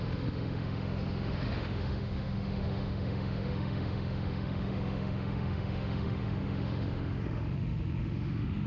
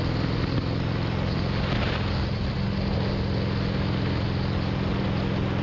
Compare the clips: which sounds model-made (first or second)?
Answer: first